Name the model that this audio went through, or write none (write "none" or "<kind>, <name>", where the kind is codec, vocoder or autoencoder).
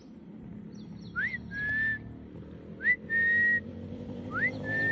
none